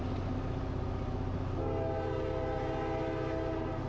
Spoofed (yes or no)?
no